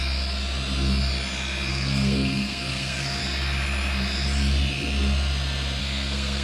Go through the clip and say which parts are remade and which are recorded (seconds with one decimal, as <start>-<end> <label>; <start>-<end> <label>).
0.0-1.7 recorded; 1.7-3.2 remade; 3.2-5.8 recorded; 5.8-6.4 remade